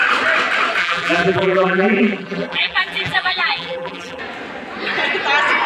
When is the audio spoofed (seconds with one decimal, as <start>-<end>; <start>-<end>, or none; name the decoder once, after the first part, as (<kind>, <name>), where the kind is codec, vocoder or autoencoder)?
0.8-4.2 (vocoder, BigVGAN v2)